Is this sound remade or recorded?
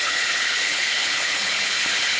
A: remade